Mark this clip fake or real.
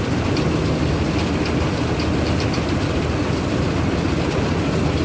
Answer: real